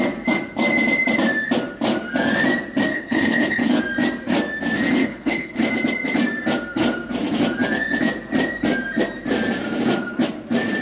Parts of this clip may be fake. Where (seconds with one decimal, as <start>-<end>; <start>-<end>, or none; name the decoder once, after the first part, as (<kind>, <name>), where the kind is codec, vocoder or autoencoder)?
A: 2.9-3.8 (codec, HILCodec); 5.0-5.7